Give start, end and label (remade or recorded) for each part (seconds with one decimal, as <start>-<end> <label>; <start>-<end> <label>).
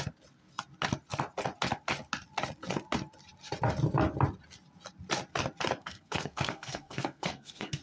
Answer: 0.0-5.8 recorded; 5.8-7.8 remade